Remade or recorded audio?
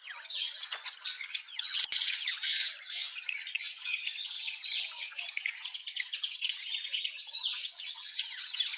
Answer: remade